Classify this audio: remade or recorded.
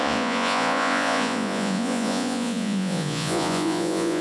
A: remade